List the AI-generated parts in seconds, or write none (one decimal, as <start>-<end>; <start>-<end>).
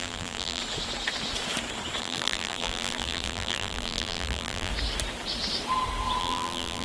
0.0-0.6; 2.0-4.7; 6.2-6.8